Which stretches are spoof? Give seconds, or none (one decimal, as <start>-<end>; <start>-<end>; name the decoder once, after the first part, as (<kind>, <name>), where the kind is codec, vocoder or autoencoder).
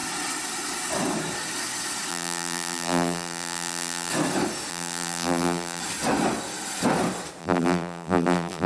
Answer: 2.1-4.1 (vocoder, BigVGAN v2); 4.7-5.8; 7.4-8.7